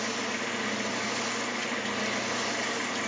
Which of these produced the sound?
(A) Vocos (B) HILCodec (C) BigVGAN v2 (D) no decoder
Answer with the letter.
D